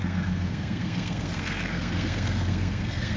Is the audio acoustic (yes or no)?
no